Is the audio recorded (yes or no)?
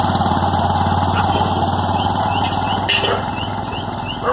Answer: yes